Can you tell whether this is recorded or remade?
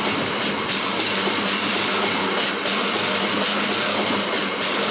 recorded